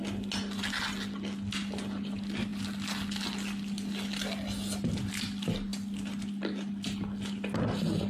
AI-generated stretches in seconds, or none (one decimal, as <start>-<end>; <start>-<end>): none